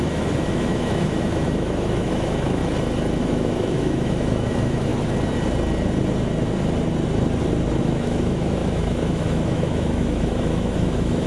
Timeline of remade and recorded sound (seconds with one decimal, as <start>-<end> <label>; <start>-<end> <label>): 0.0-2.6 remade; 2.6-3.2 recorded; 3.2-4.9 remade; 4.9-7.8 recorded; 7.8-11.3 remade